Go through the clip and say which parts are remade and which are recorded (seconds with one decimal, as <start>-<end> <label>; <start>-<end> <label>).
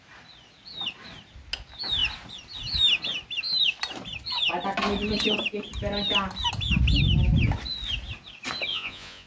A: 0.0-8.7 recorded; 8.7-9.3 remade